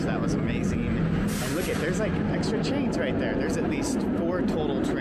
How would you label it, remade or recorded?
recorded